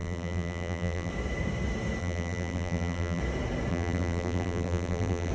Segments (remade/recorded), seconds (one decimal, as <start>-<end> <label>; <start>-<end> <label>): 0.0-1.1 remade; 1.1-2.0 recorded; 2.0-3.2 remade; 3.2-3.7 recorded; 3.7-5.3 remade